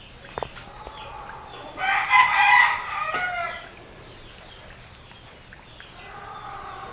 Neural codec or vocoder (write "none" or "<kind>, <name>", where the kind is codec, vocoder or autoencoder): none